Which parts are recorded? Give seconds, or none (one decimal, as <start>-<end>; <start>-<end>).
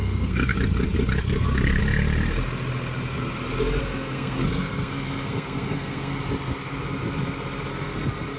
0.5-1.2; 1.8-3.8; 6.1-7.7